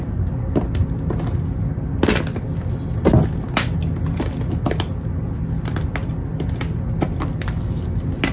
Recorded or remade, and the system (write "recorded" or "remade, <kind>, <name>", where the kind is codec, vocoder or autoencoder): recorded